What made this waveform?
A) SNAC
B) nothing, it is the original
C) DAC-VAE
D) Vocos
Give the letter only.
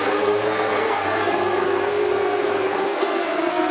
A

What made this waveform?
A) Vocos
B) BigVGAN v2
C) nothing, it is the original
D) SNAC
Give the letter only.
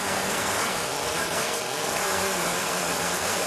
D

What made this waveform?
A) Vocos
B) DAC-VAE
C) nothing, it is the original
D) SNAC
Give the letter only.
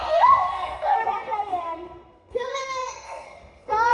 D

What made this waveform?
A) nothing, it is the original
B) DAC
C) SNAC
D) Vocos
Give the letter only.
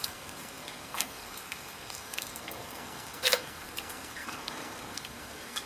C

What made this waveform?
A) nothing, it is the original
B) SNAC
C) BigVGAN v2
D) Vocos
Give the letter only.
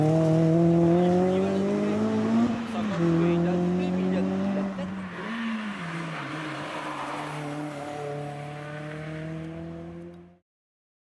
A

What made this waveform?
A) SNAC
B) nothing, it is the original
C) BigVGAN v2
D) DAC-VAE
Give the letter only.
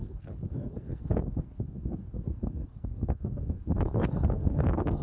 A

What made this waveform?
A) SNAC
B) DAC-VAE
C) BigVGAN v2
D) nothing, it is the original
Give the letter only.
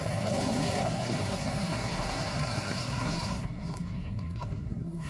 A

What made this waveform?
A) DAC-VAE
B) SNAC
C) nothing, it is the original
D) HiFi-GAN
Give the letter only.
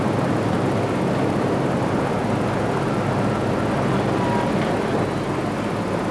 C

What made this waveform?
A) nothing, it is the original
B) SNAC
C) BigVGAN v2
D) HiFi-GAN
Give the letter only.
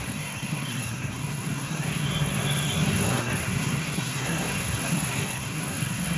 B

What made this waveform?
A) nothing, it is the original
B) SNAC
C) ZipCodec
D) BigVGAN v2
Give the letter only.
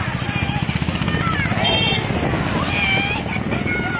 A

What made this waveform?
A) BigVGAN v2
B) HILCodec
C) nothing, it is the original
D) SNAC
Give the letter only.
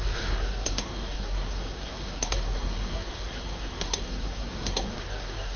D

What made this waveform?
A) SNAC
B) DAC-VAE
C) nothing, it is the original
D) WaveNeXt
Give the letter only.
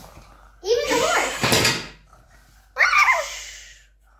C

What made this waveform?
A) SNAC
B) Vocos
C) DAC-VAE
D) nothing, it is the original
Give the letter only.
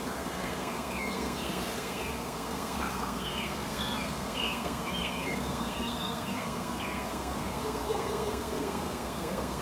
A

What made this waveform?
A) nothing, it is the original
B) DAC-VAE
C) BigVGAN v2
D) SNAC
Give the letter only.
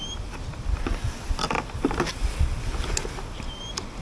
A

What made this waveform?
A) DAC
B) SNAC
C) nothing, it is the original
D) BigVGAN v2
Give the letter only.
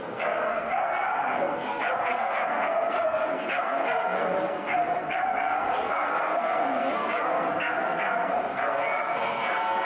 B